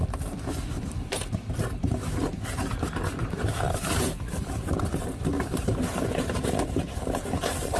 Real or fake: fake